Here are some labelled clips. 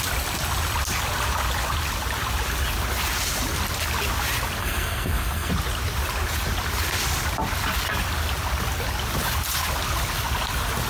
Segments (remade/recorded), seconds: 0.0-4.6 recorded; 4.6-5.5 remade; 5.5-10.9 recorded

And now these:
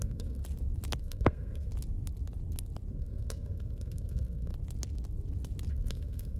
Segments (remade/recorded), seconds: 0.0-0.4 remade; 0.4-1.0 recorded; 1.0-1.7 remade; 1.7-2.9 recorded; 2.9-4.5 remade; 4.5-5.7 recorded; 5.7-6.4 remade

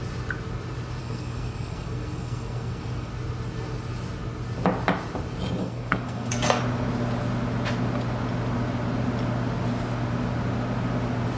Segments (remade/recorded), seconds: 0.0-1.0 recorded; 1.0-3.1 remade; 3.1-5.6 recorded; 5.6-6.6 remade; 6.6-11.4 recorded

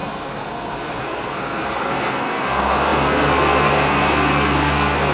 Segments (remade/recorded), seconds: 0.0-5.1 remade

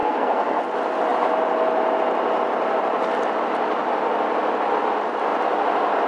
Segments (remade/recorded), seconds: 0.0-0.6 remade; 0.6-6.1 recorded